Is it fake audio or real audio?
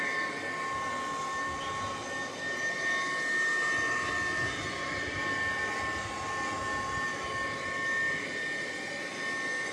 real